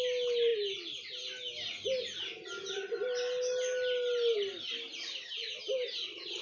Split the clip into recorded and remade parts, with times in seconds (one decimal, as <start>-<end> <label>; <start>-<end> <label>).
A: 0.0-6.4 recorded